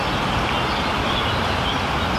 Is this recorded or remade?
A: recorded